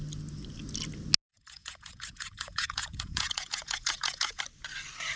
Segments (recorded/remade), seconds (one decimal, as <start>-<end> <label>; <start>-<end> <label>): 0.0-1.3 recorded; 1.3-4.4 remade; 4.4-5.2 recorded